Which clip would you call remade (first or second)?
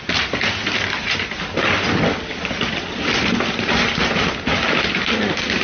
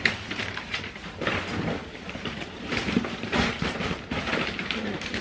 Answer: second